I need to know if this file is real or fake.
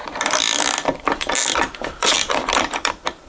fake